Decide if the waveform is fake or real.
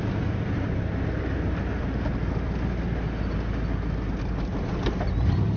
real